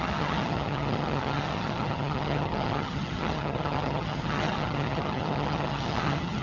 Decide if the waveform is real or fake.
fake